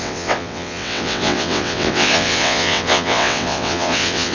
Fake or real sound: fake